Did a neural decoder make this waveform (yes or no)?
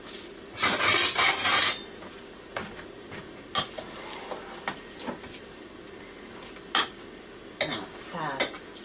no